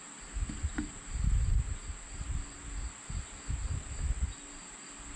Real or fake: real